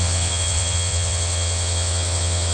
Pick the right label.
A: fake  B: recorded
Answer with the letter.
A